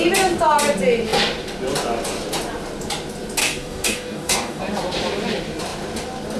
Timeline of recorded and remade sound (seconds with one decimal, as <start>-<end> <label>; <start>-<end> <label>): 0.0-3.4 recorded; 3.4-4.6 remade; 4.6-6.4 recorded